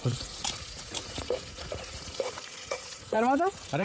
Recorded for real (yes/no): no